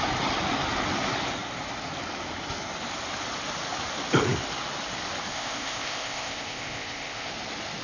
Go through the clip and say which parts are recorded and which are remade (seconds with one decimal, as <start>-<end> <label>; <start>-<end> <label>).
0.0-5.3 recorded; 5.3-7.3 remade; 7.3-7.8 recorded